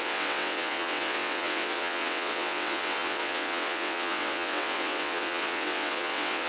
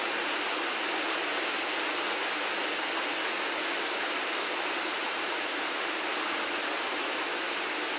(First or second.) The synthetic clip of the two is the first